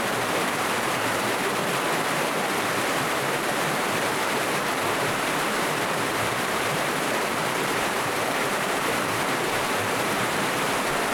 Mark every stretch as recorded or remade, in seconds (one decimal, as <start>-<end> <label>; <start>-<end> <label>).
0.0-1.6 remade; 1.6-2.9 recorded; 2.9-11.1 remade